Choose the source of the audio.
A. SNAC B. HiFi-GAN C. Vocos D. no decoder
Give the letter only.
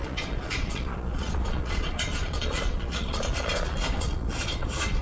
C